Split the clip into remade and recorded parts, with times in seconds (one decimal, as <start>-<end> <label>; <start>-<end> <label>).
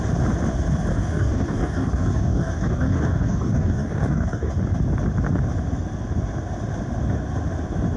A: 0.0-0.9 recorded; 0.9-4.5 remade; 4.5-8.0 recorded